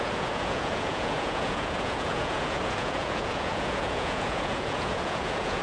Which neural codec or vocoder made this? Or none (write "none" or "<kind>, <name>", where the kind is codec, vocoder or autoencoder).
vocoder, Vocos